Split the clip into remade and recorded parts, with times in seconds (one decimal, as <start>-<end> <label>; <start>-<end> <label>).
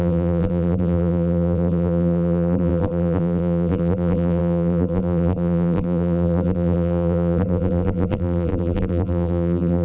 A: 0.0-9.8 remade